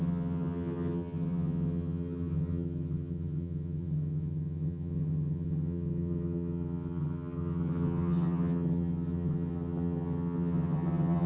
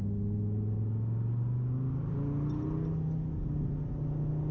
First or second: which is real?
second